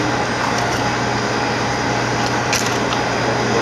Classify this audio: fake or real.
real